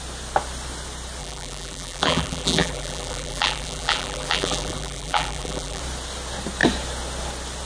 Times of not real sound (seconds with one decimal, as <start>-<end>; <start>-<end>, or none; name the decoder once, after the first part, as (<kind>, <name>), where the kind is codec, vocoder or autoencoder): 1.2-5.8 (vocoder, BigVGAN v2)